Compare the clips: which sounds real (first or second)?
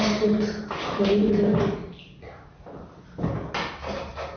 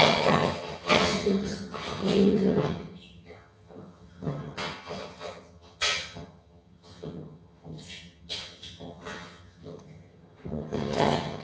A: first